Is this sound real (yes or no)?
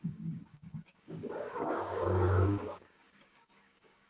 no